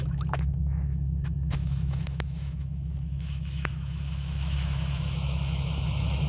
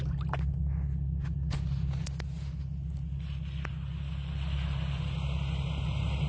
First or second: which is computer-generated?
first